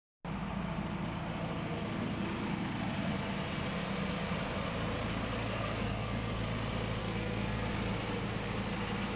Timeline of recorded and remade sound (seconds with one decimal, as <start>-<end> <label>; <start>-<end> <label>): 0.0-5.4 recorded; 5.4-6.4 remade; 6.4-7.0 recorded; 7.0-7.7 remade; 7.7-9.2 recorded